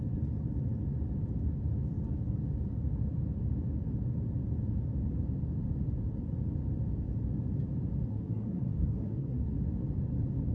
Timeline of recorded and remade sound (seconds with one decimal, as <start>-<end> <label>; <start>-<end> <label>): 0.0-8.1 recorded; 8.1-9.5 remade; 9.5-10.5 recorded